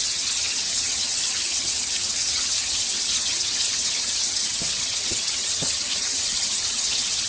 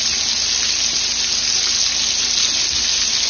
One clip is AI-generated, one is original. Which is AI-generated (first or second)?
first